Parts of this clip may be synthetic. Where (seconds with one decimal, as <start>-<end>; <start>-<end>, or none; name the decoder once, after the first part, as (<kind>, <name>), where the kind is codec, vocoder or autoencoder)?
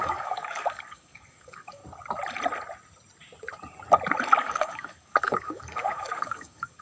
0.0-1.8 (codec, DAC); 4.4-6.8